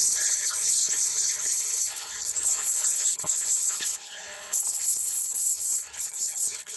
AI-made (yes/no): yes